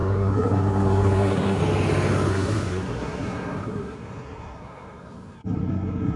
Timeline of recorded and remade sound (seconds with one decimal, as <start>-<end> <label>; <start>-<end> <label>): 0.0-1.6 remade; 1.6-2.3 recorded; 2.3-6.2 remade